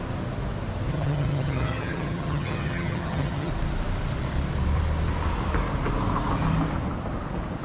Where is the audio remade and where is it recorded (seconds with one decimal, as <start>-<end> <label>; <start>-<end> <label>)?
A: 0.0-0.9 recorded; 0.9-3.5 remade; 3.5-7.6 recorded